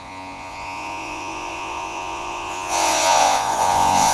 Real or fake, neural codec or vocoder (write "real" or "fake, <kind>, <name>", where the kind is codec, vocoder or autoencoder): fake, vocoder, Vocos